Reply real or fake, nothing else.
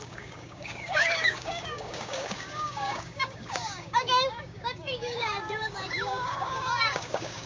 fake